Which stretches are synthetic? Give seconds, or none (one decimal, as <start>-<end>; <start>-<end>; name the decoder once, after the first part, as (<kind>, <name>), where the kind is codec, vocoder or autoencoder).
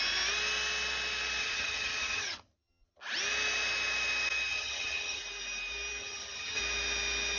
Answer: 1.4-3.0 (vocoder, HiFi-GAN); 4.5-5.2; 6.0-6.6